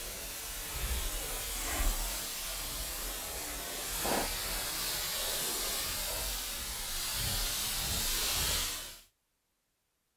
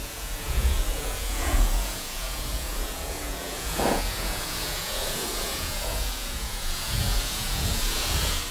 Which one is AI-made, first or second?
second